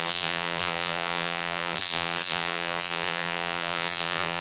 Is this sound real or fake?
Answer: fake